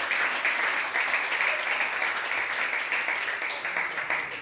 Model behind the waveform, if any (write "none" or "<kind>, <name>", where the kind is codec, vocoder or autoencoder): none